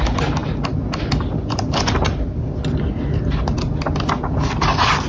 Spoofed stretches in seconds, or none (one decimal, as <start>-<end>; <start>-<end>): none